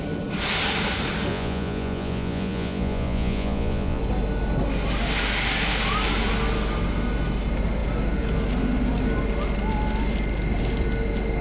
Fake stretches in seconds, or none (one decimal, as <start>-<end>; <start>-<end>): 1.3-4.0